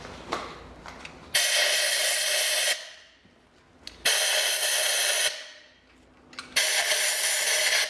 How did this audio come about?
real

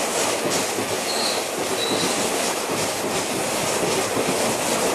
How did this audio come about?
real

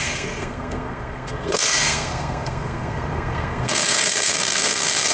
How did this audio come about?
fake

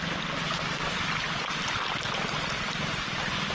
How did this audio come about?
real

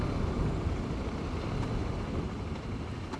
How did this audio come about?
real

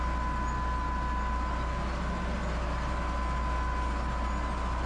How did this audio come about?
real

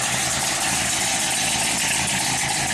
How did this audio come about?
real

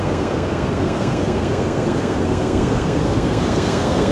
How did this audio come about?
fake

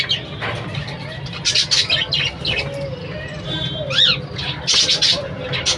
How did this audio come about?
real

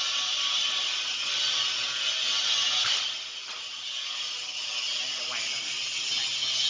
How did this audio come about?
real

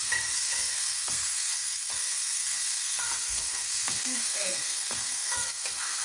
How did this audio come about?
fake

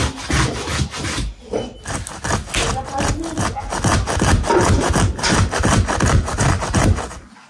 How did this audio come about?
real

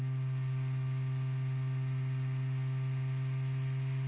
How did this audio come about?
real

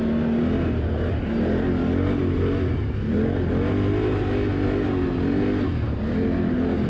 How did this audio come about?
real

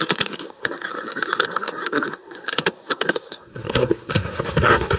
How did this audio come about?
fake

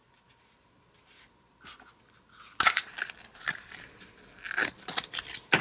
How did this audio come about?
real